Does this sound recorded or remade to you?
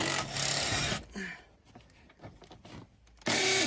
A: recorded